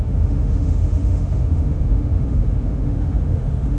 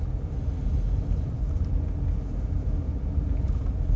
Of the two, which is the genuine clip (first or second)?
second